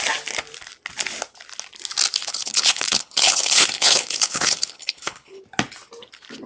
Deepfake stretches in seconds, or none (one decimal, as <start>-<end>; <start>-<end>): 2.2-5.4